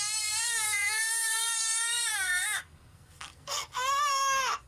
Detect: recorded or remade remade